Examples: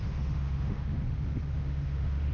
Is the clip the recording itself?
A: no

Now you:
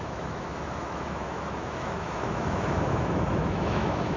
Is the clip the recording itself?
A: no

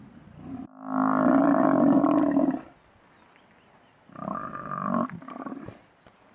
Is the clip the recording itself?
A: yes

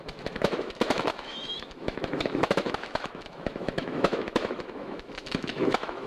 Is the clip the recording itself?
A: no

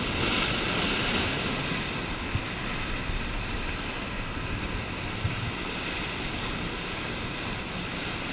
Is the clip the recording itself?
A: yes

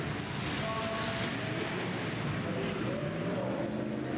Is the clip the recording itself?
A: yes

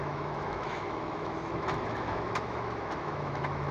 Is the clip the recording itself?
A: no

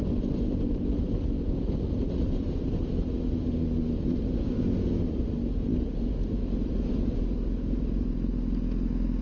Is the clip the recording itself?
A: yes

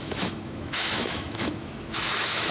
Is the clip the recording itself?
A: no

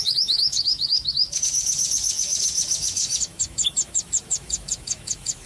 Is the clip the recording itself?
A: no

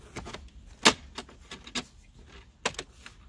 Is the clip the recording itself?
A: yes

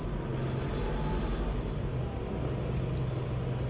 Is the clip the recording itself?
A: yes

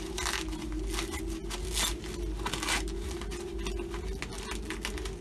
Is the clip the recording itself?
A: yes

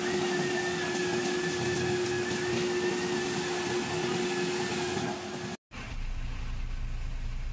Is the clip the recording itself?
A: yes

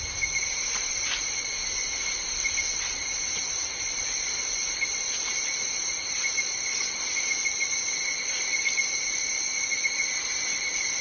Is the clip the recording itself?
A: yes